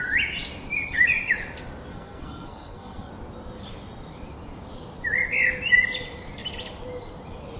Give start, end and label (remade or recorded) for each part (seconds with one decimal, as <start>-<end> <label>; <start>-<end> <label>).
0.0-1.9 recorded; 1.9-3.1 remade; 3.1-7.6 recorded